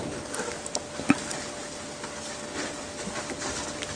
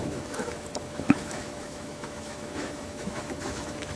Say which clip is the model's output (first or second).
second